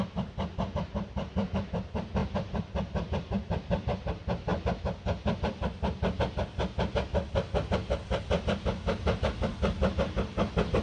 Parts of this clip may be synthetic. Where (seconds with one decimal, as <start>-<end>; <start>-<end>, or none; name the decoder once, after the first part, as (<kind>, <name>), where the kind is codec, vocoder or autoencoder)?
2.2-3.4 (vocoder, BigVGAN v2)